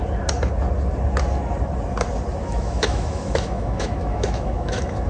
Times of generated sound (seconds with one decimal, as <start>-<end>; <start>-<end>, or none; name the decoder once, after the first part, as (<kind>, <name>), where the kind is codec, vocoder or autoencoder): 2.4-5.1 (autoencoder, DAC-VAE)